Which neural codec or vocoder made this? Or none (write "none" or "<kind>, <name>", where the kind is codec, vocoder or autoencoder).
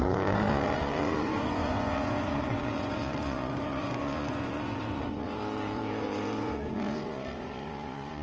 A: vocoder, Vocos